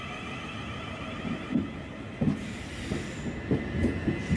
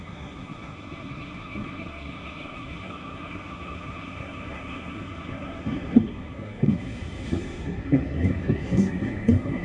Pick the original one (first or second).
first